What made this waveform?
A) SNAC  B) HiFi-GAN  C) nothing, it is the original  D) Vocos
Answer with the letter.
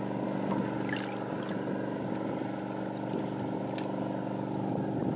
C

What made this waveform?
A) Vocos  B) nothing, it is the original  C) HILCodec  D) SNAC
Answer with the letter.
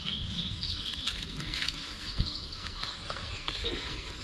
D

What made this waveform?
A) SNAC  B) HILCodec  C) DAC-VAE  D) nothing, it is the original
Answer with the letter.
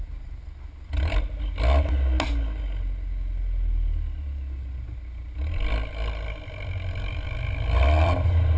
D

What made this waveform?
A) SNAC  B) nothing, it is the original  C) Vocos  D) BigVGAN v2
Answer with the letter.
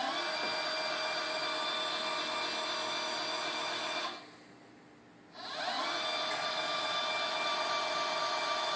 B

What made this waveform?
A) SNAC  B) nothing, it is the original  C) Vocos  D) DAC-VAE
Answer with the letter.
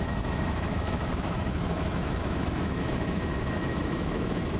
D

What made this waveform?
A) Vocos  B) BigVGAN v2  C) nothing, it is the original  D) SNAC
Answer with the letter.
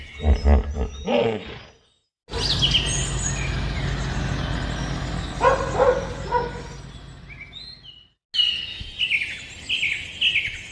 C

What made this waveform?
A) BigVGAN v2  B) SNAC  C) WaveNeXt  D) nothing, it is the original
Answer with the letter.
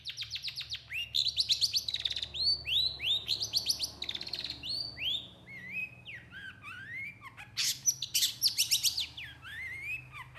D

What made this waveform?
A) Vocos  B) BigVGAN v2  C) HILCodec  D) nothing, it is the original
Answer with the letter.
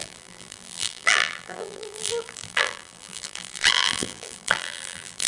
B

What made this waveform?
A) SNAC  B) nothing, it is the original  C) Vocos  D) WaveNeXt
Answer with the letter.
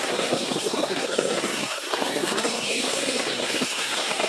A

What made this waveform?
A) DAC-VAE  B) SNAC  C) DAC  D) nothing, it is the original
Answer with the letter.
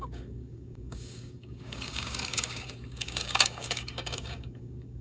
C